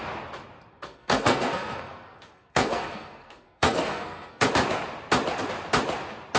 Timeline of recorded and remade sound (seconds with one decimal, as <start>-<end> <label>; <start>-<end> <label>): 0.0-0.7 recorded; 0.7-4.5 remade; 4.5-6.4 recorded